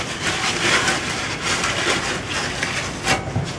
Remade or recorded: recorded